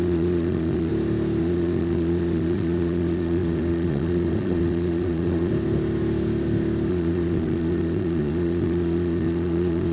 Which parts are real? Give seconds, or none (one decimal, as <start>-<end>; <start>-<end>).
0.9-1.4; 5.5-6.9